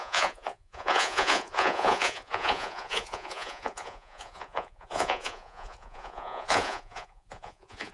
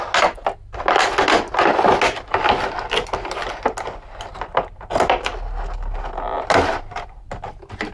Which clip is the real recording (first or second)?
second